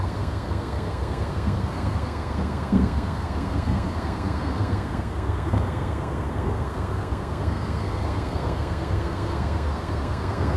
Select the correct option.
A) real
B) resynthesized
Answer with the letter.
B